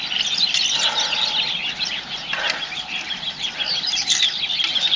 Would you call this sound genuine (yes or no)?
yes